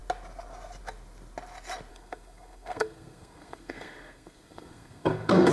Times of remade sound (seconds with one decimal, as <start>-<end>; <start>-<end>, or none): 1.9-5.5